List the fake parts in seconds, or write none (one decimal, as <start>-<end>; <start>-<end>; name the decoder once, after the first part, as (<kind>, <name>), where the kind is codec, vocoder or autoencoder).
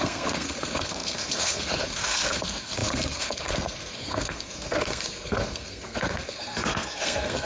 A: 0.0-7.4 (codec, SNAC)